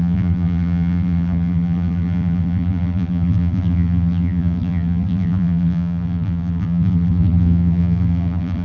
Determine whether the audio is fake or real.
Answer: fake